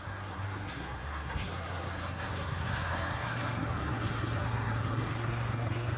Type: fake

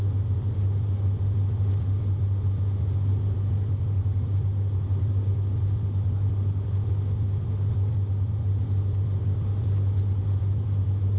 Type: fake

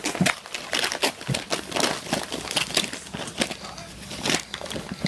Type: real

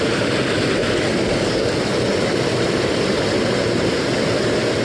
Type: real